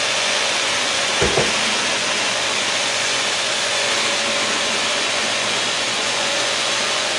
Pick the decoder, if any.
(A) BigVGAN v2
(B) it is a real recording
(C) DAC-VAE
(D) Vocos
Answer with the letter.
D